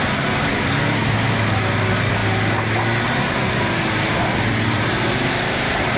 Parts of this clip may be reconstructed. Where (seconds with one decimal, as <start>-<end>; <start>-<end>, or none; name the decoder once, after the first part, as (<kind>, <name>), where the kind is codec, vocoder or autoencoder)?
none